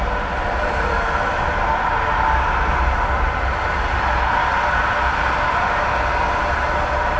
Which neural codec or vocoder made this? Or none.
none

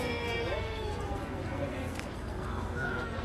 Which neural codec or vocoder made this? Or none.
codec, SNAC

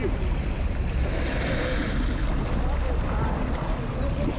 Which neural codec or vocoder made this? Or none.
none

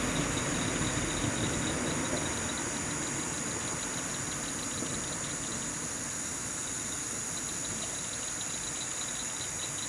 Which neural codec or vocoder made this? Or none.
none